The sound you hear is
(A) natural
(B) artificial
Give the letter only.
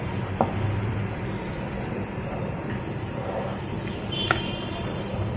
B